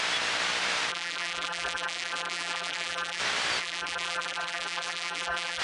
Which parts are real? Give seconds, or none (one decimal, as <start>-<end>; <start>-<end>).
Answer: 0.0-0.9; 3.2-3.6